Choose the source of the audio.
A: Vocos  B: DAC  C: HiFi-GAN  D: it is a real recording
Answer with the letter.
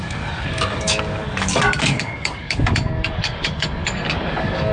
B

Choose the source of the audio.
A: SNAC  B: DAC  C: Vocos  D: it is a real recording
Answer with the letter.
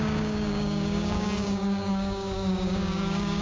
B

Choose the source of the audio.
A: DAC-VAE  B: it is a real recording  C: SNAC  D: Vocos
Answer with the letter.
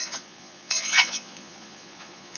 D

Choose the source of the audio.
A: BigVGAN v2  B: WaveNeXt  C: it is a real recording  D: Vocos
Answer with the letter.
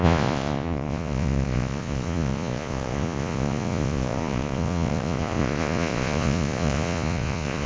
D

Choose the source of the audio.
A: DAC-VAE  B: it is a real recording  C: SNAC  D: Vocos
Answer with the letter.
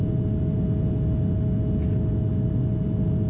B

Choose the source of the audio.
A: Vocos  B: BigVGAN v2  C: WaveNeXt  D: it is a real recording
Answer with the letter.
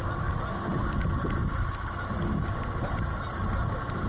D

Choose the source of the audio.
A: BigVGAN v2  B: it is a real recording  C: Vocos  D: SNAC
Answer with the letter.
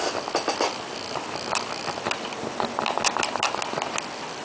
B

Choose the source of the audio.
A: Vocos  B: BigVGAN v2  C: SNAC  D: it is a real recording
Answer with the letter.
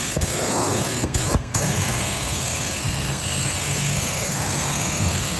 C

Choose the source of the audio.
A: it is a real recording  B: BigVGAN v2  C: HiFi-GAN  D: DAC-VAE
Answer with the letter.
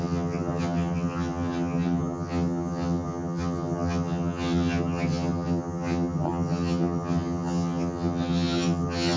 C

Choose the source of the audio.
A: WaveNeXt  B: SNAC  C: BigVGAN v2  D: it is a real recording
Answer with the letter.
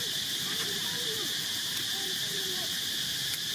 C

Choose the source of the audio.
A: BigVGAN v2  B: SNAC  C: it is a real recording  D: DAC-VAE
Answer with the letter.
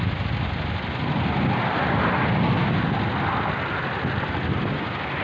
C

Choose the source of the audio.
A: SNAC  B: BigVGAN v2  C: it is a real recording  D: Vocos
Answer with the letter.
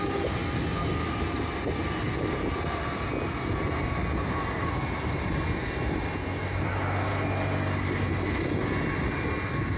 C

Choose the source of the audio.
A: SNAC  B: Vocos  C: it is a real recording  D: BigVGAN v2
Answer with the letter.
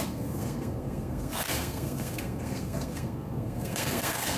A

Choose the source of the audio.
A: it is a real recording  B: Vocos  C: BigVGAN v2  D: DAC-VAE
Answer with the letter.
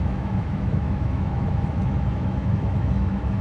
D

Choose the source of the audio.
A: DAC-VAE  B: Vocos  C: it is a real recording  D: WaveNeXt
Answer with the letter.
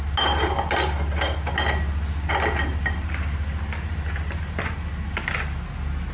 C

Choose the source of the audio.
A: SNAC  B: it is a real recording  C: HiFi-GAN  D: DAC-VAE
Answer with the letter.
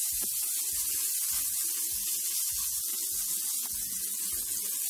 B